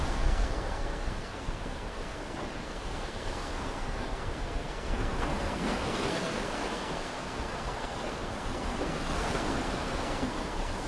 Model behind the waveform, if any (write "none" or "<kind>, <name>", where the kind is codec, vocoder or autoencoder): codec, SNAC